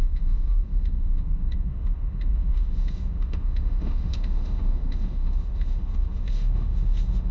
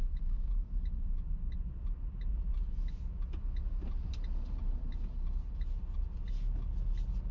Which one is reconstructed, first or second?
first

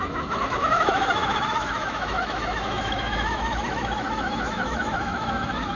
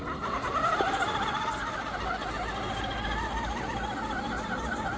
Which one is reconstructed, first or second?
first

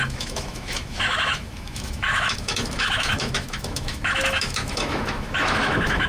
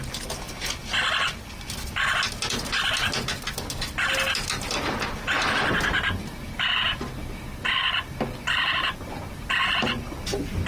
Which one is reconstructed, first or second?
first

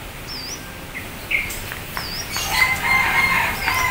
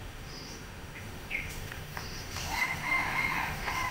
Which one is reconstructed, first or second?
second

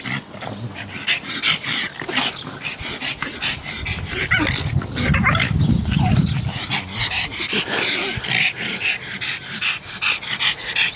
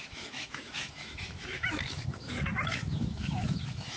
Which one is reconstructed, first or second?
second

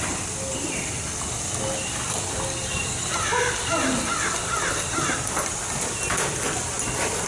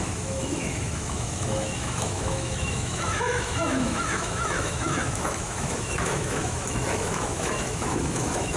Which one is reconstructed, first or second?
second